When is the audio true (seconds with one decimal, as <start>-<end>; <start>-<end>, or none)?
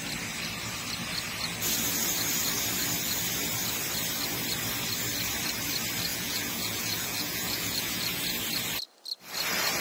0.0-6.1; 8.2-9.8